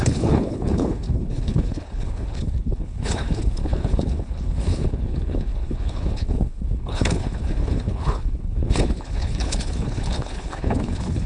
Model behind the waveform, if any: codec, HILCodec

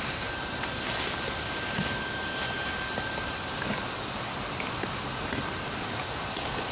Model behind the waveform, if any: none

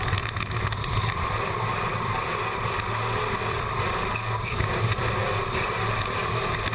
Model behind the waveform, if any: none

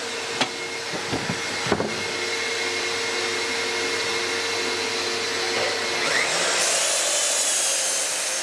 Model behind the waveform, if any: none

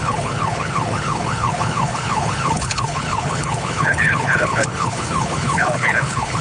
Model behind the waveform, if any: codec, HILCodec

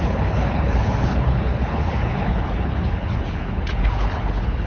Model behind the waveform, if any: codec, HILCodec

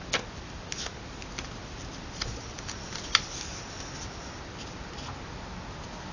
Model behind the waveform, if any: none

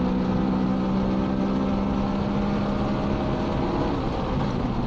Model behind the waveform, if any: none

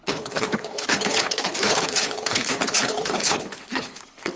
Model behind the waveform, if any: codec, HILCodec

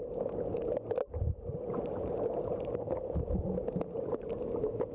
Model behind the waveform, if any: none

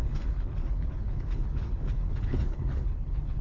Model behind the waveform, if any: codec, HILCodec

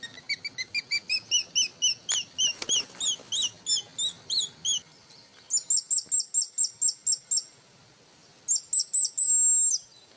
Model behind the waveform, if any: none